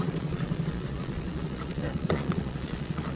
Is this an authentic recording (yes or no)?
no